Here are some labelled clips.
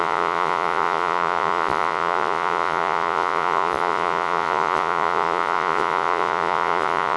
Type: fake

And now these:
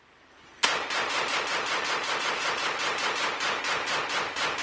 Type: real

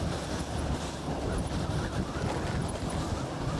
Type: real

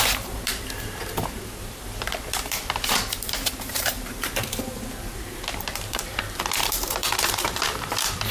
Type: fake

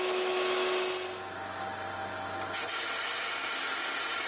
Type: real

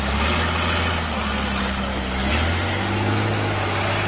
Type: real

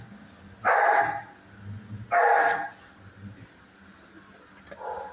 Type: real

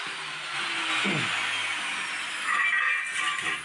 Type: real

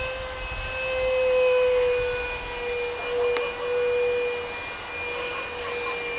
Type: real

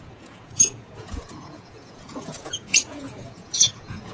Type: fake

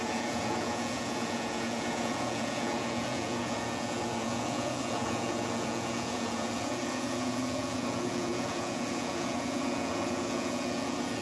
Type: fake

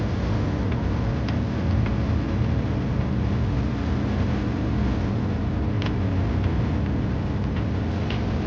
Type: real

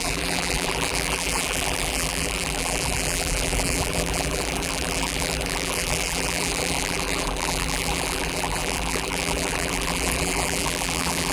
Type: fake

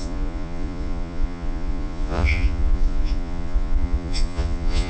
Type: fake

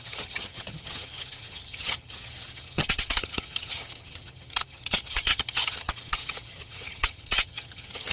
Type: fake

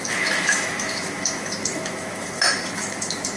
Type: fake